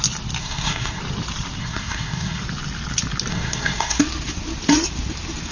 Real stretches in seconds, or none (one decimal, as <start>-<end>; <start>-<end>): 0.0-0.4; 1.0-1.6; 2.4-3.3; 4.0-5.5